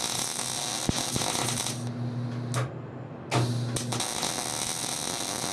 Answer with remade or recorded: recorded